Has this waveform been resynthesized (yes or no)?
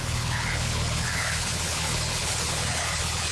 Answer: yes